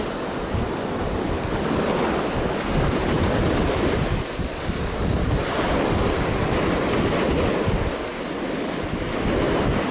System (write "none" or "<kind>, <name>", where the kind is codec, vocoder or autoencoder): none